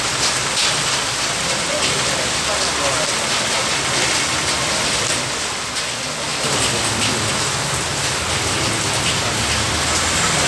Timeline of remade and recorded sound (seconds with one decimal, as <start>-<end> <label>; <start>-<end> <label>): 0.0-10.5 recorded